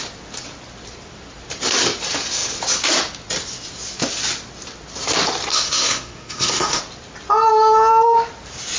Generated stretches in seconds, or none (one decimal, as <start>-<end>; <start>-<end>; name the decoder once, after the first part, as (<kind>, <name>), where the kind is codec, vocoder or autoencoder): 5.5-6.8 (codec, SNAC)